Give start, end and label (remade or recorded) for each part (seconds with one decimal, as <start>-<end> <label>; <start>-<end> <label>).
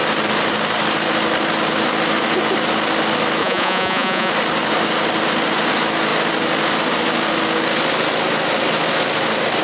0.0-3.4 recorded; 3.4-4.3 remade; 4.3-9.6 recorded